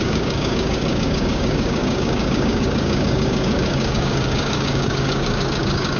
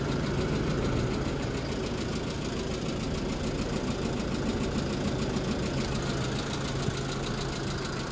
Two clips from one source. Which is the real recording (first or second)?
second